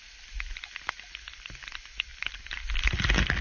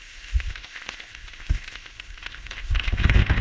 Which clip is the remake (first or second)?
second